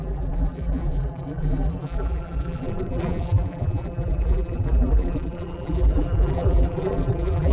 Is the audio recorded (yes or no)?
no